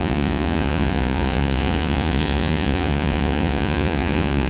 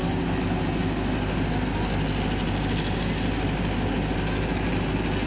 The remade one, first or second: first